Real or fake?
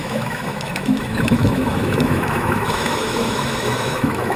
fake